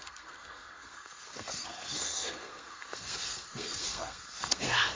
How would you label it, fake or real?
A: fake